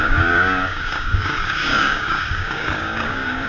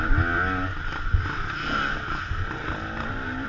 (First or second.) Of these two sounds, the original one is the second